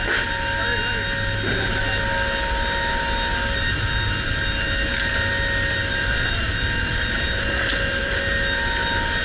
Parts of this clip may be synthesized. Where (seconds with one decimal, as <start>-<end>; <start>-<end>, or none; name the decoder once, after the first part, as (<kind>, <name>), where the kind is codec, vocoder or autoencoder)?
5.8-8.2 (vocoder, BigVGAN v2)